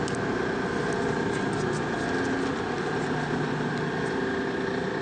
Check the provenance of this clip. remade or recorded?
recorded